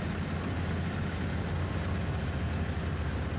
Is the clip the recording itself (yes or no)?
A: yes